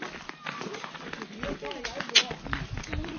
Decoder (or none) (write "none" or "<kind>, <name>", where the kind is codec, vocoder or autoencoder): none